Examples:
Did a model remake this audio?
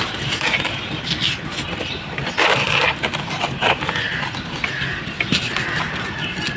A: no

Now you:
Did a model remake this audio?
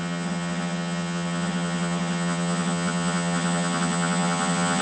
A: yes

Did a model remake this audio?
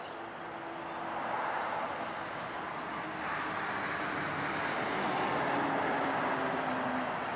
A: no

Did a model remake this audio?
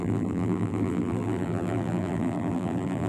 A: yes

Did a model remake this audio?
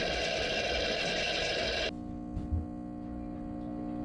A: no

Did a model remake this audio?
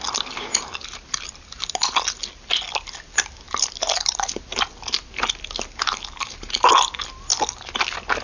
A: no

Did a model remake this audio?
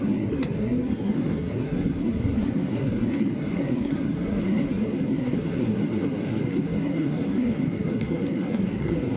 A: yes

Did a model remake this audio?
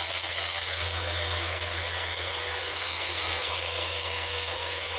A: yes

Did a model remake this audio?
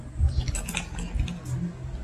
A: no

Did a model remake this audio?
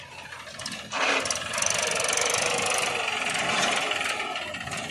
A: no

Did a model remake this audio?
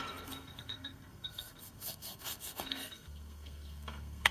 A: yes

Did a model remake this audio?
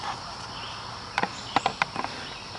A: no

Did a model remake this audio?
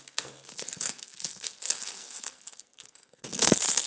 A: yes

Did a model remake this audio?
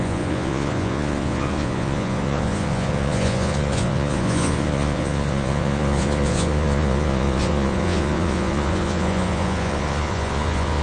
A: yes